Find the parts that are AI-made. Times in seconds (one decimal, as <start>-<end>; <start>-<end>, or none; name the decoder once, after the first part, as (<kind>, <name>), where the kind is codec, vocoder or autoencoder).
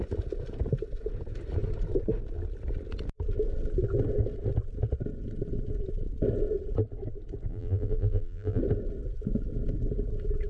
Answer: 7.5-8.6 (vocoder, BigVGAN v2)